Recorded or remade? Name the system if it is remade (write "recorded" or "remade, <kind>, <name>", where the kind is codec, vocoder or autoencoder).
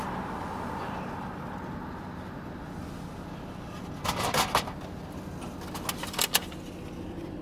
recorded